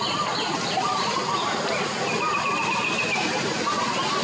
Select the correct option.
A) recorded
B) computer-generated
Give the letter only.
A